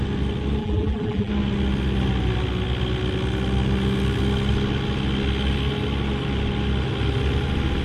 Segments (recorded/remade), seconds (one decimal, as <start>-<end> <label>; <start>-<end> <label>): 0.0-0.6 recorded; 0.6-1.3 remade; 1.3-7.8 recorded

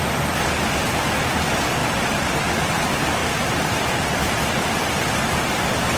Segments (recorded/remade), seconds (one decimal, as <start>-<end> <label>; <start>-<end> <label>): 0.0-1.8 recorded; 1.8-2.5 remade; 2.5-3.2 recorded; 3.2-5.6 remade; 5.6-6.0 recorded

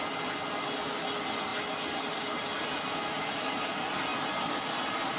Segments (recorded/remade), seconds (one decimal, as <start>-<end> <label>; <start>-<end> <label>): 0.0-5.2 recorded

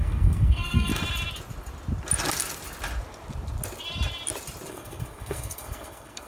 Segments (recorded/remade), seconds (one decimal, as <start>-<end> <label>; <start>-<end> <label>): 0.0-0.9 remade; 0.9-4.7 recorded; 4.7-6.3 remade